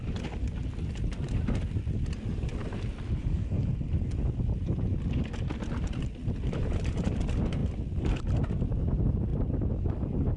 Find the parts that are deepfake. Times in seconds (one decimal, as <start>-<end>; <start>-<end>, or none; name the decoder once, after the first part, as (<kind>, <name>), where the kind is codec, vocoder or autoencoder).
none